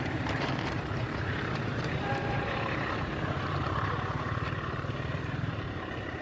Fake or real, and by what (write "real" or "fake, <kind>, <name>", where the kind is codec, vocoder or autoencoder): fake, vocoder, BigVGAN v2